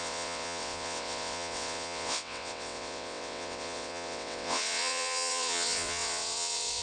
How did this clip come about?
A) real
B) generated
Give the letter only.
B